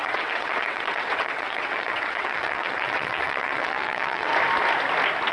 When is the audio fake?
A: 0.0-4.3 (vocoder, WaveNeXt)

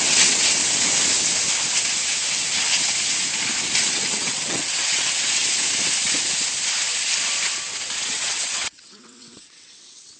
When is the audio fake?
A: 0.0-0.6 (vocoder, WaveNeXt); 3.9-5.4; 8.1-10.2

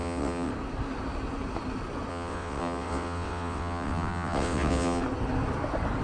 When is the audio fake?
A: 0.0-0.5 (vocoder, WaveNeXt); 2.1-5.0

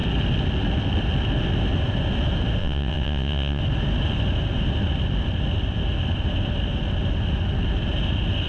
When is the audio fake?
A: 2.6-3.6 (vocoder, WaveNeXt)

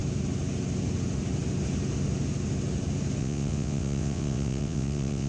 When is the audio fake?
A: 3.2-5.3 (vocoder, WaveNeXt)

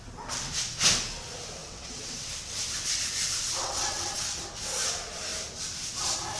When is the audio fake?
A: 1.6-2.3 (vocoder, WaveNeXt); 3.6-4.4

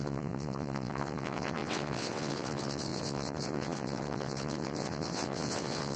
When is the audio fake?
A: 0.0-6.0 (vocoder, WaveNeXt)